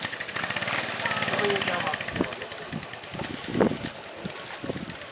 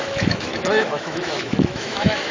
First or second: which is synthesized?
second